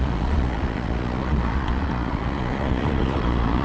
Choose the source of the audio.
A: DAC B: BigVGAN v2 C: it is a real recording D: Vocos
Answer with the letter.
D